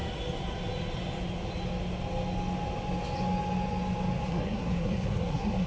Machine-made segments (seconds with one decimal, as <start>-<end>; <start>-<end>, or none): 4.3-5.7